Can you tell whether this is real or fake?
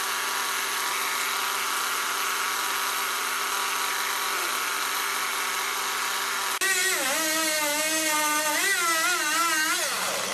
real